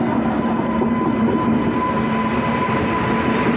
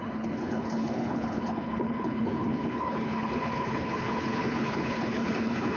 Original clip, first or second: first